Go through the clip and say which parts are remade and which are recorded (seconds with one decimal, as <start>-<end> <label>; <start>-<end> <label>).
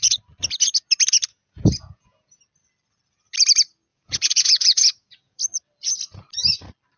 0.0-1.3 recorded; 1.3-2.4 remade; 2.4-3.9 recorded; 3.9-5.4 remade; 5.4-7.0 recorded